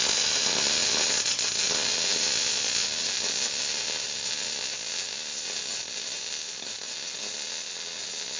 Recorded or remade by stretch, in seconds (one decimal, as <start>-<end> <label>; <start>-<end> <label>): 0.0-5.8 recorded; 5.8-7.2 remade; 7.2-8.4 recorded